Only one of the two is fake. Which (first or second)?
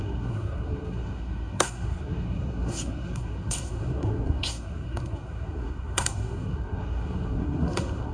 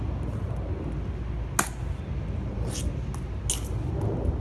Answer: first